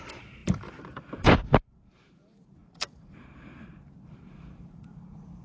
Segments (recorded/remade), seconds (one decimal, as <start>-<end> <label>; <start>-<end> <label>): 0.0-5.4 remade